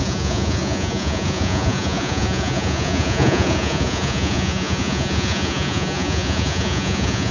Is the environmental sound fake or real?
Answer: fake